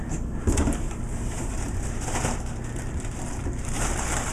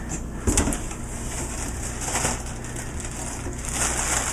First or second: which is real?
second